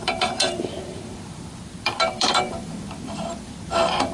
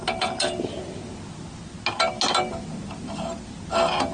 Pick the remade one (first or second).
first